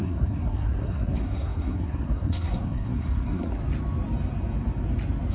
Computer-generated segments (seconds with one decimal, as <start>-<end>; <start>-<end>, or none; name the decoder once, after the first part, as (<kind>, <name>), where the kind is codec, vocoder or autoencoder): 0.0-3.6 (codec, SNAC)